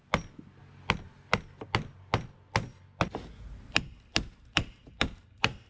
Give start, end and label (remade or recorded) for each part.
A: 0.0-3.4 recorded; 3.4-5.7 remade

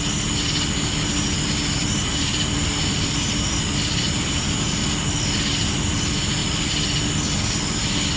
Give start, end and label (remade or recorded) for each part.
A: 0.0-1.8 recorded; 1.8-4.7 remade; 4.7-5.5 recorded; 5.5-6.0 remade; 6.0-8.2 recorded

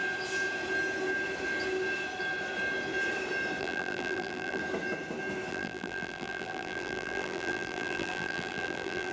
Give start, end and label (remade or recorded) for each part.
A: 0.0-3.6 recorded; 3.6-4.6 remade; 4.6-5.5 recorded; 5.5-9.1 remade